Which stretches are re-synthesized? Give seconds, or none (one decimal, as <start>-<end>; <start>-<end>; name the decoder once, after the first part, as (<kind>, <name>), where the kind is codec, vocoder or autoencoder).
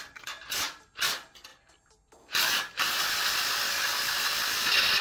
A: none